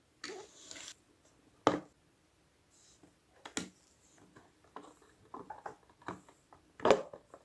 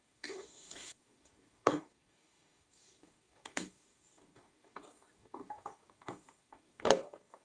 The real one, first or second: first